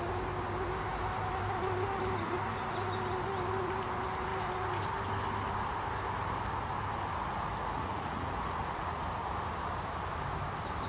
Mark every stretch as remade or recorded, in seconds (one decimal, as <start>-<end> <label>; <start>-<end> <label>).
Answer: 0.0-7.6 recorded; 7.6-9.0 remade; 9.0-10.9 recorded